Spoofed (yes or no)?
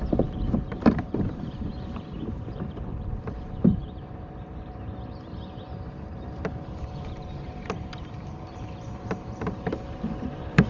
yes